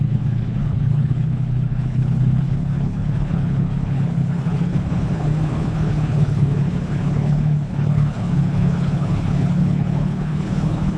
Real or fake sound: fake